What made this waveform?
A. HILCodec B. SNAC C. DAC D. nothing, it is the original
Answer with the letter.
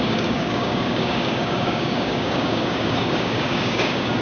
C